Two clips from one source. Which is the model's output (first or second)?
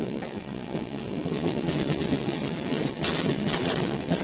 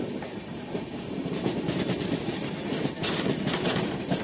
first